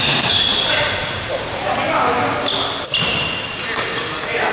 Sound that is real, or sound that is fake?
real